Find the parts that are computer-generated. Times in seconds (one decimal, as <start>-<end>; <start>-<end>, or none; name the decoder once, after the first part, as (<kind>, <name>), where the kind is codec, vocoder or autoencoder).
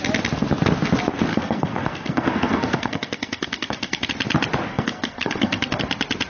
1.3-4.1 (codec, SNAC); 4.7-5.8